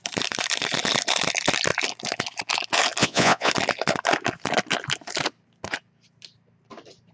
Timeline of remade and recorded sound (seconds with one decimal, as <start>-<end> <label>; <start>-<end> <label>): 0.0-3.0 recorded; 3.0-3.5 remade; 3.5-7.1 recorded